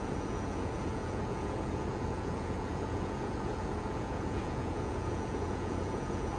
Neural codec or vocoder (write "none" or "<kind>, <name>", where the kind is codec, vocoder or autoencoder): vocoder, Vocos